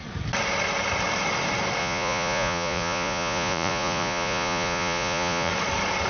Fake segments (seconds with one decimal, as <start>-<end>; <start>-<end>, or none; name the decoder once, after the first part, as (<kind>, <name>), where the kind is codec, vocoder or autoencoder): 1.8-5.5 (vocoder, Vocos)